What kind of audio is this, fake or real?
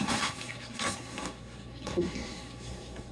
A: fake